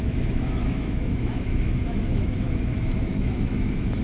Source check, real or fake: fake